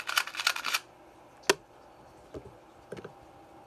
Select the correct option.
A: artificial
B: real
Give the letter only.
B